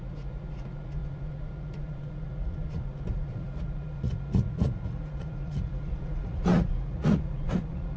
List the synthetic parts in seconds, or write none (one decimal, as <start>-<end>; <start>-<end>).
0.0-8.0